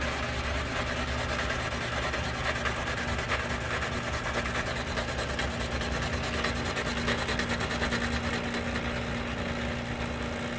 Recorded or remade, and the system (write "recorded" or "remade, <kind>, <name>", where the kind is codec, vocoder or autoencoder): recorded